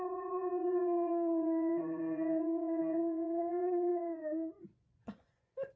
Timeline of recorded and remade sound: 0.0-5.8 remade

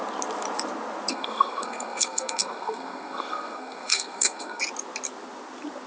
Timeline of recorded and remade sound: 0.0-1.1 recorded; 1.1-4.6 remade; 4.6-5.9 recorded

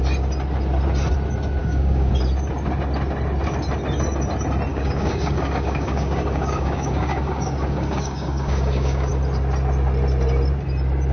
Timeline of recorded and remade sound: 0.0-1.6 recorded; 1.6-2.1 remade; 2.1-4.7 recorded; 4.7-9.1 remade; 9.1-11.1 recorded

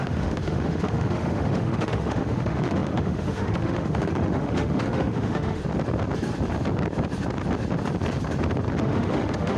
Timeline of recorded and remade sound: 0.0-5.6 remade; 5.6-8.8 recorded; 8.8-9.6 remade